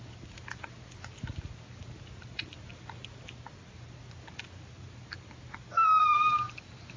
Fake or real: real